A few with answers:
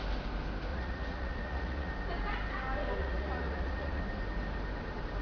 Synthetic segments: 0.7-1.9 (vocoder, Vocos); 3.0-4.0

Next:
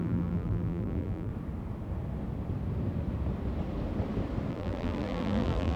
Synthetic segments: 0.0-1.3 (vocoder, BigVGAN v2); 4.5-5.8

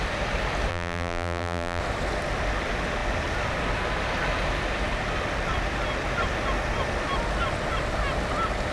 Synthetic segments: 0.7-1.8 (vocoder, BigVGAN v2)

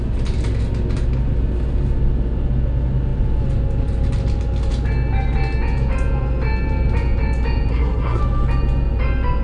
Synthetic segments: 7.7-8.2 (codec, SNAC)